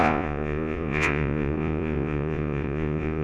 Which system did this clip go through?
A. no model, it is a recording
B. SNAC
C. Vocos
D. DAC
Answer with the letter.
C